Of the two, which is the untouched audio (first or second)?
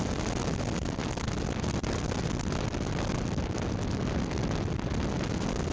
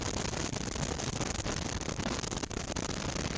first